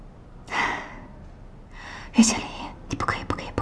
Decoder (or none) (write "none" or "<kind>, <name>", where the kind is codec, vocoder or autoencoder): none